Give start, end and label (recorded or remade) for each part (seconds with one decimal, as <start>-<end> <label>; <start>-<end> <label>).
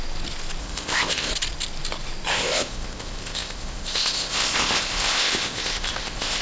0.0-0.6 recorded; 0.6-1.3 remade; 1.3-2.3 recorded; 2.3-6.4 remade